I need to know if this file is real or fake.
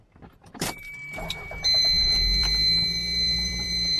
fake